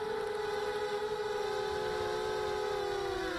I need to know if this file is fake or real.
real